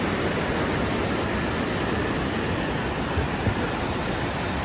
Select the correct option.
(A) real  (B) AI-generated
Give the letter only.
A